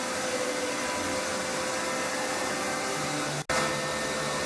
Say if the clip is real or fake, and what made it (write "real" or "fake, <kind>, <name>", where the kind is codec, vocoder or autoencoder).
real